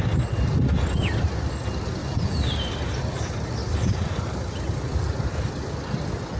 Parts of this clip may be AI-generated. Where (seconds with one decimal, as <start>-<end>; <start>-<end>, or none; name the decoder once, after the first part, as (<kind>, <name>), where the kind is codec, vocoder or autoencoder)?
2.0-2.9 (vocoder, BigVGAN v2); 3.6-4.5